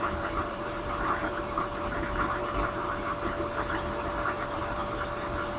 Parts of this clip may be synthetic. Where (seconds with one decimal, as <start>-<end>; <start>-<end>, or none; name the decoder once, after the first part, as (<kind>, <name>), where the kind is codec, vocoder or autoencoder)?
0.0-1.2 (vocoder, BigVGAN v2); 4.1-4.8